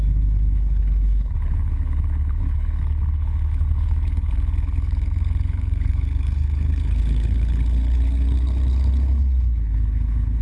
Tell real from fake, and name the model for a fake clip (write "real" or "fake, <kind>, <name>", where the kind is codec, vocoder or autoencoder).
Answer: fake, codec, HILCodec